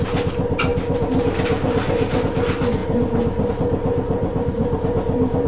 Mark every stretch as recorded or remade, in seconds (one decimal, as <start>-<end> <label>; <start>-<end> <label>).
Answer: 0.0-4.2 recorded; 4.2-4.8 remade; 4.8-5.5 recorded